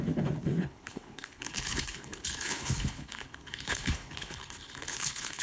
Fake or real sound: fake